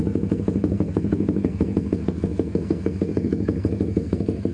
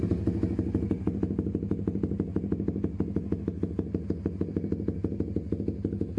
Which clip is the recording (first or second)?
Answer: second